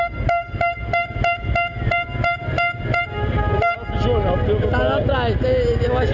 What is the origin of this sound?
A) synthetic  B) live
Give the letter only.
B